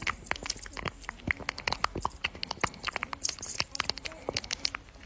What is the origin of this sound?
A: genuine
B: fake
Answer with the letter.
A